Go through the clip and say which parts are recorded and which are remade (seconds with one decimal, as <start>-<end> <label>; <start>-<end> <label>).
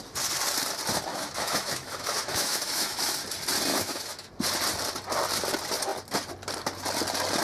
0.0-1.1 recorded; 1.1-3.1 remade; 3.1-3.7 recorded; 3.7-4.3 remade; 4.3-7.4 recorded